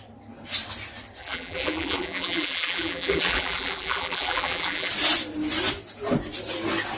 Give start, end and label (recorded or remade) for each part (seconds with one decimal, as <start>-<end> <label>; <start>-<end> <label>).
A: 0.0-1.2 recorded; 1.2-4.9 remade; 4.9-7.0 recorded